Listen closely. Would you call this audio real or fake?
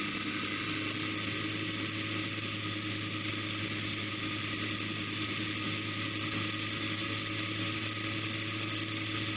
real